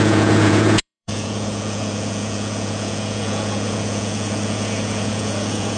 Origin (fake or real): fake